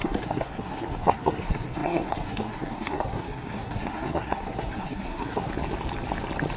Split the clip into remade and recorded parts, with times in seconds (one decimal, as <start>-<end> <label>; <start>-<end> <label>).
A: 0.0-5.5 remade; 5.5-6.6 recorded